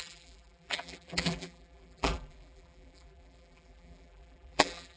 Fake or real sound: fake